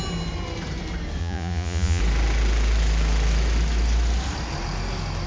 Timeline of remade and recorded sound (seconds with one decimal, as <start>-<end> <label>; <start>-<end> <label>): 0.0-1.2 recorded; 1.2-2.0 remade; 2.0-5.3 recorded